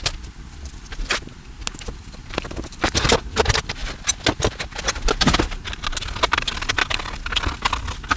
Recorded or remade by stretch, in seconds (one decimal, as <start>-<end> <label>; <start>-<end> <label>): 0.0-8.2 recorded